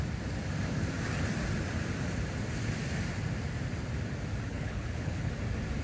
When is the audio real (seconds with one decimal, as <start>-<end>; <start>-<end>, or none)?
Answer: 0.0-4.5; 5.3-5.8